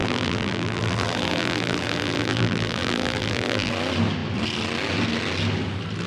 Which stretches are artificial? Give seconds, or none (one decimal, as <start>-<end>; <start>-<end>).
0.0-3.7